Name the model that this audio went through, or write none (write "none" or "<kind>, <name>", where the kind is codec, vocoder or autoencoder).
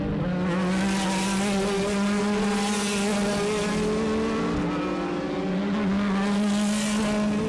none